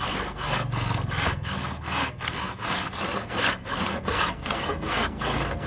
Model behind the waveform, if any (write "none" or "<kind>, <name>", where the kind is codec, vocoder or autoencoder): codec, SNAC